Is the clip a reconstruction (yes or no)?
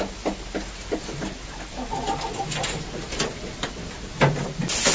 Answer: no